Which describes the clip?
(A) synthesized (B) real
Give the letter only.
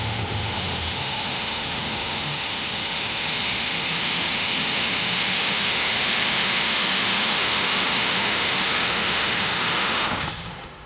A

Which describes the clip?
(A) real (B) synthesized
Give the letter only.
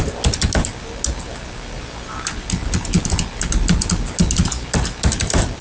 A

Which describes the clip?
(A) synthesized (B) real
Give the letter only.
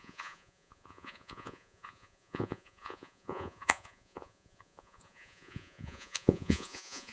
A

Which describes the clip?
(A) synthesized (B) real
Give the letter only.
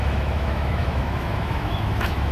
A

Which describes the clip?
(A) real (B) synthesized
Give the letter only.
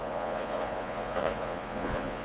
B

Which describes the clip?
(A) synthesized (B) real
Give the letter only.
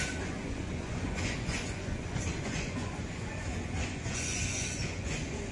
A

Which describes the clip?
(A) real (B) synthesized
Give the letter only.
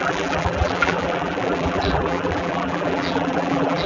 B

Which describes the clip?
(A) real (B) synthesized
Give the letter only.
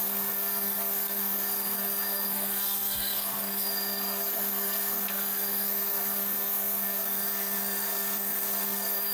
B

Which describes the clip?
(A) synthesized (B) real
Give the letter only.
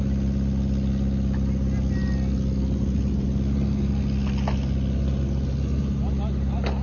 B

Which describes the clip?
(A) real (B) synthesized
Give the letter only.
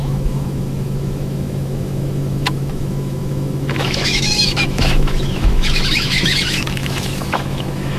B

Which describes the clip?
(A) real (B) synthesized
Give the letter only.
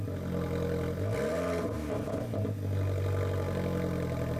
A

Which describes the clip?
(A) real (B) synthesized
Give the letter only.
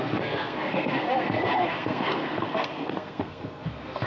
B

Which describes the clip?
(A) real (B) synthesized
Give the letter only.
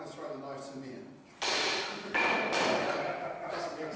A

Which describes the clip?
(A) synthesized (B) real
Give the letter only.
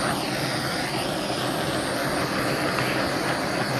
B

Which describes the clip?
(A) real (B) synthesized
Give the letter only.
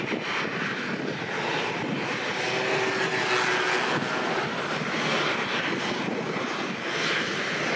A